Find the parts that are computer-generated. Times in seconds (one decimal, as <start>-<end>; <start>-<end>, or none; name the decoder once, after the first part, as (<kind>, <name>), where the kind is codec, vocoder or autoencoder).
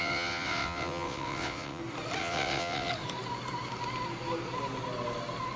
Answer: 0.0-1.8 (vocoder, WaveNeXt); 2.2-2.9